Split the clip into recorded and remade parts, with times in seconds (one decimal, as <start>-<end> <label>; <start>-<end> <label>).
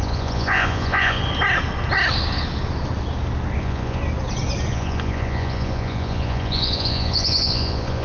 0.0-1.2 remade; 1.2-3.6 recorded; 3.6-4.0 remade; 4.0-4.7 recorded; 4.7-8.0 remade